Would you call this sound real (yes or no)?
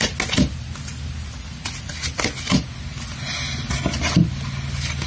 yes